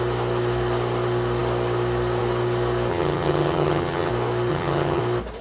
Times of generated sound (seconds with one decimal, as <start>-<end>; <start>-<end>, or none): 2.9-4.1; 4.5-5.0